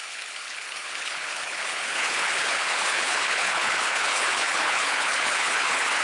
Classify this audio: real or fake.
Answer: fake